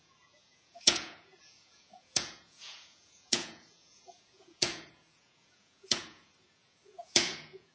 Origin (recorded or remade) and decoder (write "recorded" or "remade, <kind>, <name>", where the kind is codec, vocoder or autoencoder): remade, vocoder, Vocos